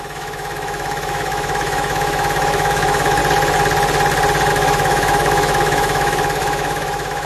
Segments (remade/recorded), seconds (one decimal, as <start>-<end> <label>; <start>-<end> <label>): 0.0-3.2 remade; 3.2-4.5 recorded; 4.5-7.3 remade